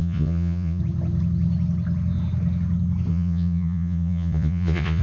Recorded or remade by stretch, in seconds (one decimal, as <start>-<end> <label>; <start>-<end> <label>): 0.0-0.8 remade; 0.8-3.1 recorded; 3.1-5.0 remade